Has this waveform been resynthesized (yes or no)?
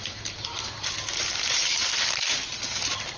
yes